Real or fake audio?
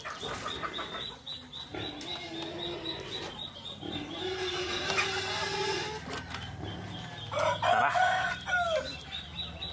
real